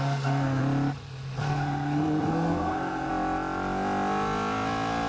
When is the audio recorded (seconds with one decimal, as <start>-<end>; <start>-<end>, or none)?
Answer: 0.6-1.4; 3.1-5.1